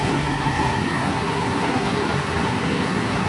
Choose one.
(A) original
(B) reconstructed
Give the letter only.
B